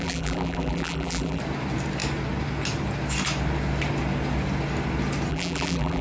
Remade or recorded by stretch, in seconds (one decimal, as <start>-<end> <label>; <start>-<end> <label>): 0.0-1.4 remade; 1.4-5.3 recorded; 5.3-6.0 remade